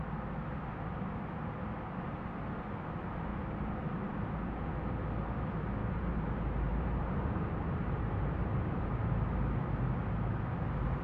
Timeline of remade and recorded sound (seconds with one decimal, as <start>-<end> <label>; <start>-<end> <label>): 0.0-0.7 recorded; 0.7-1.4 remade; 1.4-3.3 recorded; 3.3-3.8 remade; 3.8-5.8 recorded; 5.8-8.5 remade; 8.5-11.0 recorded